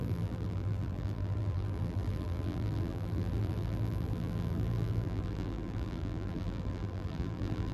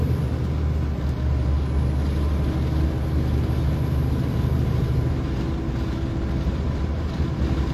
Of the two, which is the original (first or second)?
second